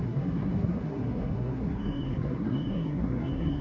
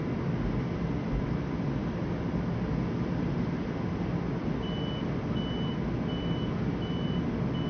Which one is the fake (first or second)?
first